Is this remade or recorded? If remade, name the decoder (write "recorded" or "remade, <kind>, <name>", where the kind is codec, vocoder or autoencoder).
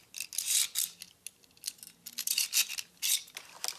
recorded